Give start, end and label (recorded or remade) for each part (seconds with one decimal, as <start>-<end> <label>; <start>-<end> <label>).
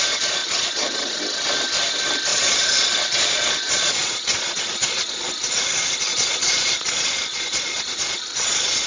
0.0-0.4 recorded; 0.4-1.2 remade; 1.2-2.3 recorded; 2.3-5.3 remade; 5.3-6.1 recorded; 6.1-8.9 remade